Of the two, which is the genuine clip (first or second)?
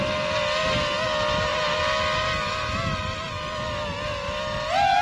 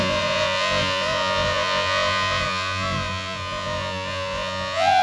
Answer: first